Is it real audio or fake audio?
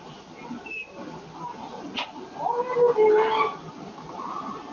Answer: real